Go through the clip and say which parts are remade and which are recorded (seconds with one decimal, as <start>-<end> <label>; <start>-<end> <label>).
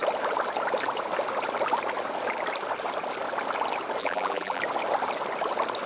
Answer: 0.0-4.0 recorded; 4.0-4.6 remade; 4.6-5.9 recorded